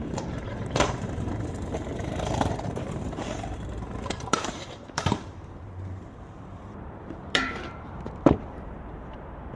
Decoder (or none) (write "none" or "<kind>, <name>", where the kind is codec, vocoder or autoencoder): vocoder, BigVGAN v2